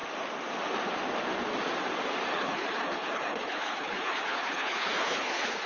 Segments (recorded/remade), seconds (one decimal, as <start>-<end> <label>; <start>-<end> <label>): 0.0-2.3 recorded; 2.3-5.7 remade